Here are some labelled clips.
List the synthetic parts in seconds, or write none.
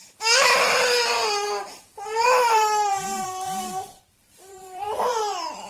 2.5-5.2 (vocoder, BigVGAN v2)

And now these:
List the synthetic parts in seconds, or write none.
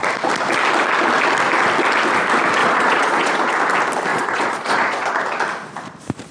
2.6-3.5 (vocoder, Vocos); 4.1-5.2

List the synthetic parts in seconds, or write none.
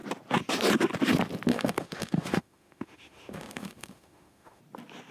1.5-4.6 (autoencoder, DAC-VAE)